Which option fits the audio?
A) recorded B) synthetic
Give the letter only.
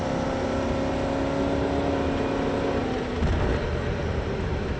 A